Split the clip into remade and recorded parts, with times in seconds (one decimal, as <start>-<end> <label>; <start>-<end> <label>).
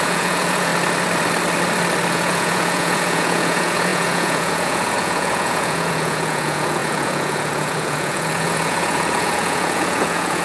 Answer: 0.0-0.7 remade; 0.7-2.1 recorded; 2.1-10.4 remade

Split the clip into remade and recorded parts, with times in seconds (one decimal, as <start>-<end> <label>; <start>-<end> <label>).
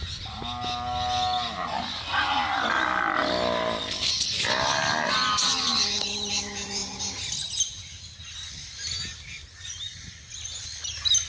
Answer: 0.0-11.3 recorded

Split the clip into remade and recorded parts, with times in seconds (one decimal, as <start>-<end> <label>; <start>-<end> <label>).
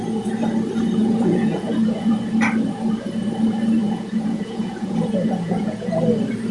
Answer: 0.0-1.0 recorded; 1.0-2.1 remade; 2.1-3.8 recorded; 3.8-6.0 remade; 6.0-6.5 recorded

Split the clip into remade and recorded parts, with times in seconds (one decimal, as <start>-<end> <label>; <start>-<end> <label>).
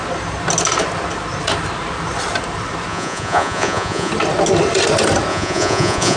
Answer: 0.0-2.9 recorded; 2.9-4.1 remade; 4.1-5.3 recorded; 5.3-6.2 remade